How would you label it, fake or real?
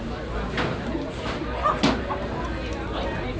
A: real